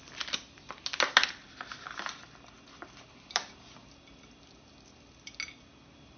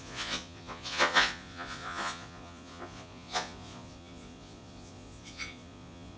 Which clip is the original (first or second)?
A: first